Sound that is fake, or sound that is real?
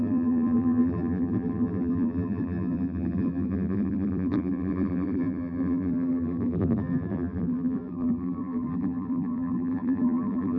fake